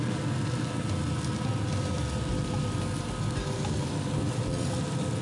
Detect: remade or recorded recorded